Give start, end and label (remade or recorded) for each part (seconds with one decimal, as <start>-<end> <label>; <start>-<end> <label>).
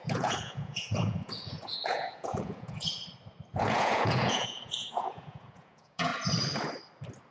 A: 0.0-3.0 remade; 3.0-3.5 recorded; 3.5-6.1 remade; 6.1-7.3 recorded